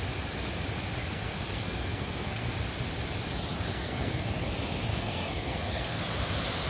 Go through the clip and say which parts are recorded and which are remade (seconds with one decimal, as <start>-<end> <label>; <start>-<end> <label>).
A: 0.0-1.0 recorded; 1.0-2.5 remade; 2.5-3.7 recorded; 3.7-4.5 remade; 4.5-4.9 recorded; 4.9-6.0 remade; 6.0-6.7 recorded